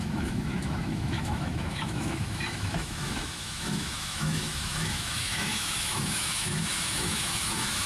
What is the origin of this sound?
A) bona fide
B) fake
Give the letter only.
B